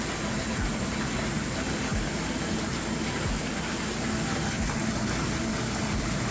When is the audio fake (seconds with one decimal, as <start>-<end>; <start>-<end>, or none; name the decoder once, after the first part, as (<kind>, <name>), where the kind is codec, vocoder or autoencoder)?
0.0-1.9 (vocoder, BigVGAN v2); 3.2-6.3